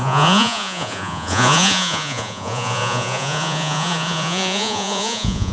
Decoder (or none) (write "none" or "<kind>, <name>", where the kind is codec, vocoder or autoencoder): vocoder, Vocos